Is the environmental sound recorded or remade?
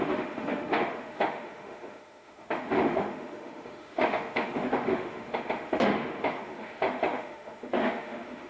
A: remade